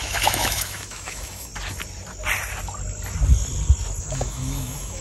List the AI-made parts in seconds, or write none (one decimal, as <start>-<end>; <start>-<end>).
0.0-1.5; 4.0-5.0